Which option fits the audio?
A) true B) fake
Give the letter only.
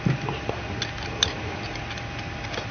A